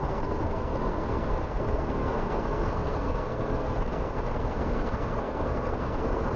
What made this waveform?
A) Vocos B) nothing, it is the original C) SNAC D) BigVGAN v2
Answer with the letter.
C